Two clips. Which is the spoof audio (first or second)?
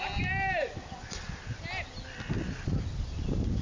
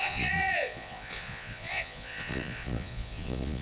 second